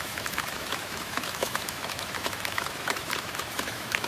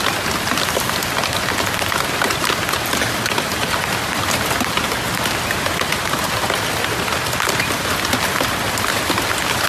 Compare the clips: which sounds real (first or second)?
second